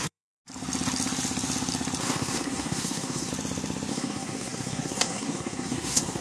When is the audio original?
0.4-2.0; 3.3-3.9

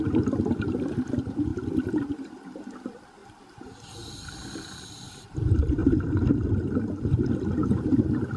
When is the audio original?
1.5-2.1; 5.8-7.0

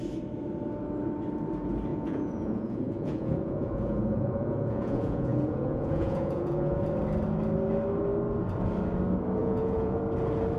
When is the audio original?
0.0-1.9; 6.8-9.4; 10.0-10.6

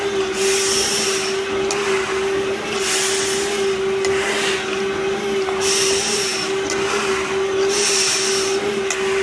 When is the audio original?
0.0-9.2

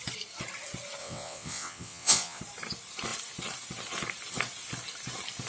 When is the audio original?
0.0-1.0; 2.4-5.5

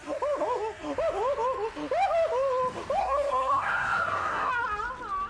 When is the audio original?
0.0-3.0; 4.5-5.3